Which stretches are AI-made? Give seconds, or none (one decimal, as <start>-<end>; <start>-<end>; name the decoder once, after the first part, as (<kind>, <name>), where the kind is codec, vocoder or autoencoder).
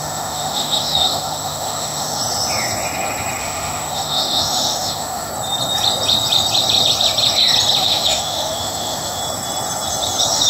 0.0-2.2 (autoencoder, DAC-VAE); 3.4-5.3; 7.8-9.2